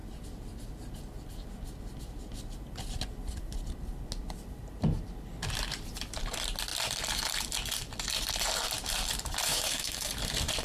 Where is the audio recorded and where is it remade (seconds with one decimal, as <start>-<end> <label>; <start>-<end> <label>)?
0.0-9.5 recorded; 9.5-10.1 remade; 10.1-10.6 recorded